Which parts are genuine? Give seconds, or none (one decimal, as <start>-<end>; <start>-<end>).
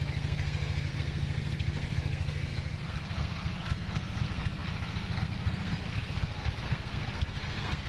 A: none